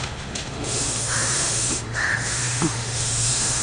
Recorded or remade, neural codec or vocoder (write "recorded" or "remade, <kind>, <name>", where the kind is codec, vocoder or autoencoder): remade, autoencoder, DAC-VAE